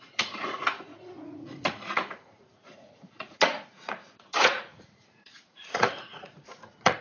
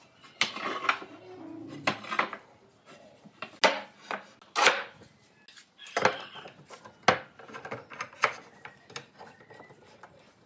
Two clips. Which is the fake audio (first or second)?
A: first